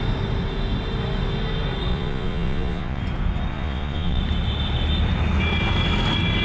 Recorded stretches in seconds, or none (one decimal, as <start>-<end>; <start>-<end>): 0.0-1.9; 3.0-3.5; 4.2-6.4